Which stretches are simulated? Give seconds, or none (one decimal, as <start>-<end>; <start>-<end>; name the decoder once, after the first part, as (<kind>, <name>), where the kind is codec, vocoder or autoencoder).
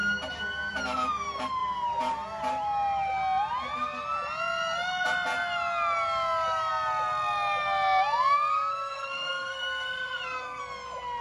8.5-10.6 (codec, SNAC)